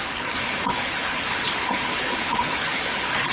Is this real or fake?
fake